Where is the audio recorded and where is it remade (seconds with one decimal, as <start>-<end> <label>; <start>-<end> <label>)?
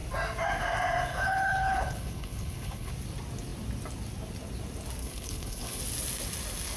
0.0-1.1 recorded; 1.1-2.9 remade; 2.9-5.0 recorded; 5.0-5.8 remade; 5.8-6.8 recorded